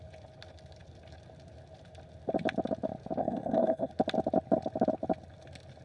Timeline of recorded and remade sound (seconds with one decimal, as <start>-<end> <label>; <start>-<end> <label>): 0.0-3.2 recorded; 3.2-3.9 remade; 3.9-5.8 recorded